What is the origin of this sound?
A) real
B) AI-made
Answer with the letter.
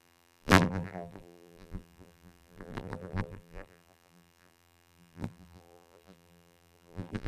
B